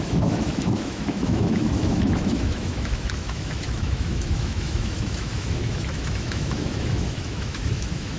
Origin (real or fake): fake